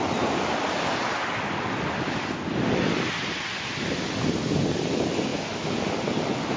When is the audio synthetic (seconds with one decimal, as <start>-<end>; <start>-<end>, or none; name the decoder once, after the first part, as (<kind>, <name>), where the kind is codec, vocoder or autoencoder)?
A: 0.7-3.1 (vocoder, BigVGAN v2); 5.3-6.6